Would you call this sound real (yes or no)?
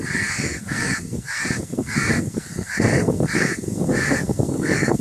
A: no